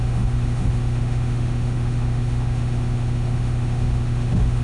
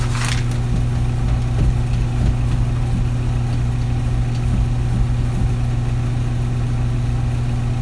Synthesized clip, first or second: first